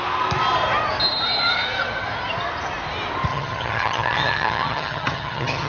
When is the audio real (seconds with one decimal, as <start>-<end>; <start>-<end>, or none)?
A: 0.0-3.3

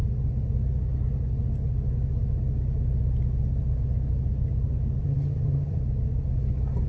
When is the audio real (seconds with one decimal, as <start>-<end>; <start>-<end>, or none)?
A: 0.0-5.0; 5.8-6.9

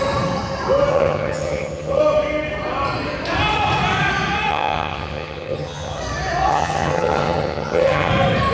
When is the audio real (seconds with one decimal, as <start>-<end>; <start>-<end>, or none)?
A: 0.0-0.9; 2.0-4.5; 6.0-6.5; 8.1-8.5

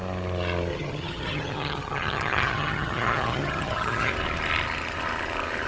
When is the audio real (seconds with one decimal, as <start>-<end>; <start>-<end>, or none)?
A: 0.0-0.7; 4.1-5.7

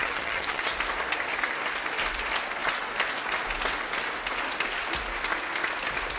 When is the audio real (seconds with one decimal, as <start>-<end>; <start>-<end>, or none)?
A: 0.6-6.2

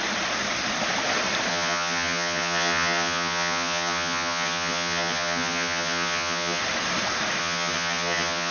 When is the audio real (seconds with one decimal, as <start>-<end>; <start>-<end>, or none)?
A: 0.0-1.5; 6.6-7.4

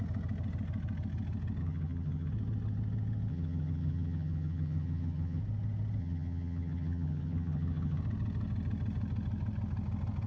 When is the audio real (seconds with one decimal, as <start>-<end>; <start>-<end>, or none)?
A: 0.0-1.6; 2.3-3.3; 5.4-6.0; 8.0-10.3